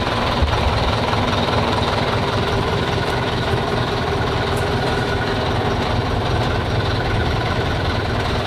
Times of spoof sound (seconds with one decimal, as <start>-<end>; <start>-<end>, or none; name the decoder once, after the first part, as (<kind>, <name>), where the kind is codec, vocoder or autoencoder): 0.4-5.3 (vocoder, BigVGAN v2); 7.2-7.8